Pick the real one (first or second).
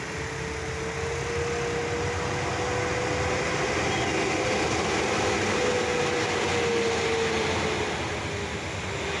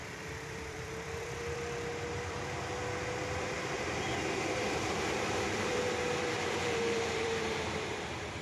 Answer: first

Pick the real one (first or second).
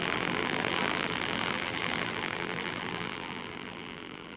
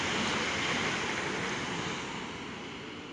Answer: second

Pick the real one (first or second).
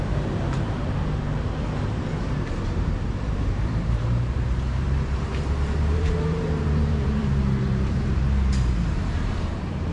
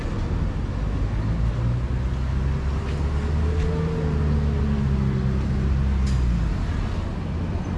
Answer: second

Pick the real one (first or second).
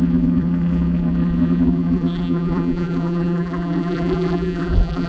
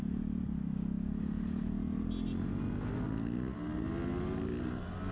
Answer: second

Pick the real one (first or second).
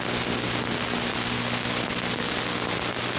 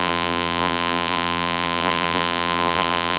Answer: first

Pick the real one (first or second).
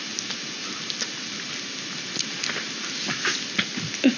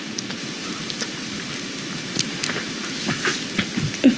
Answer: first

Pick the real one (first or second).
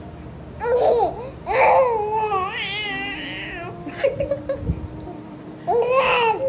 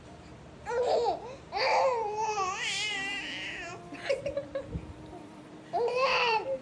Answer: first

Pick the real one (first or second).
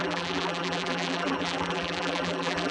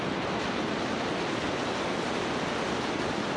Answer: second